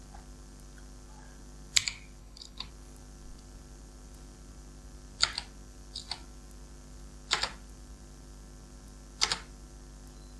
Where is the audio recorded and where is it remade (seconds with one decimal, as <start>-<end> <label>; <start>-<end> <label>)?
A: 0.0-2.2 recorded; 2.2-2.7 remade; 2.7-10.4 recorded